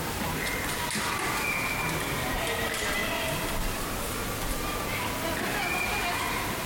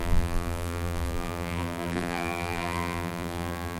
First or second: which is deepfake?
second